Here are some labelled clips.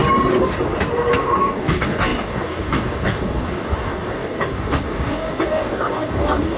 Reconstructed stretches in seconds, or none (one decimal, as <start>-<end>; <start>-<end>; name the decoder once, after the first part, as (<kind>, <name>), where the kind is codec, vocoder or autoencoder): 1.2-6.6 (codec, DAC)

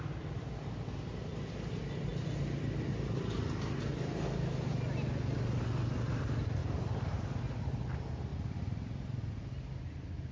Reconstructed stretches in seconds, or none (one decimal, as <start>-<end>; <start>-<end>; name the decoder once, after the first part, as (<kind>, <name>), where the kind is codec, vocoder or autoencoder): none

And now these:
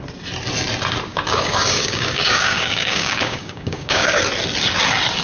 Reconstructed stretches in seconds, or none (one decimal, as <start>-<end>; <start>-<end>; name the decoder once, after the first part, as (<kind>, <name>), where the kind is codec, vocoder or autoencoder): 1.1-4.2 (codec, DAC)

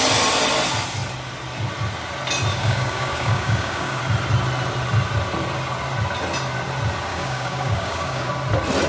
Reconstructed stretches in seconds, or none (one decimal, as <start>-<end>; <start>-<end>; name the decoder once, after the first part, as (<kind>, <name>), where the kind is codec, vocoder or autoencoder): 2.5-4.0 (codec, DAC); 7.1-8.3

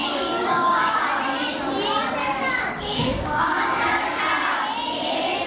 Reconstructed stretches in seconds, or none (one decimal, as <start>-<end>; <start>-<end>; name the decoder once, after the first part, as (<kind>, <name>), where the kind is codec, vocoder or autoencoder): 0.0-1.0 (codec, DAC); 2.2-4.2

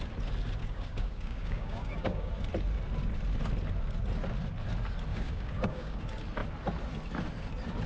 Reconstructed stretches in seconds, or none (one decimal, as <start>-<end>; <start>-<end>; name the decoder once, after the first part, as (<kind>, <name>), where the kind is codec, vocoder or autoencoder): 0.6-2.3 (codec, DAC); 5.1-6.0